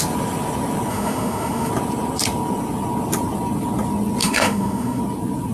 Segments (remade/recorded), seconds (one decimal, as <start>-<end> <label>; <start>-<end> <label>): 0.0-0.9 recorded; 0.9-1.7 remade; 1.7-4.2 recorded; 4.2-5.0 remade; 5.0-5.5 recorded